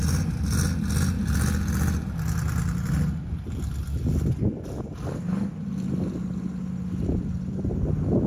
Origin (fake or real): real